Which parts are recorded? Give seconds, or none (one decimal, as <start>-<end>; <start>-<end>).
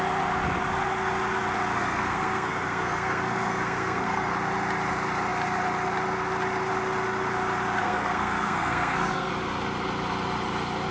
0.0-1.7; 4.3-7.8; 9.3-10.9